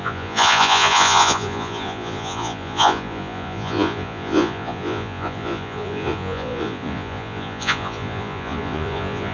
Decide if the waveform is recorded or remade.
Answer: remade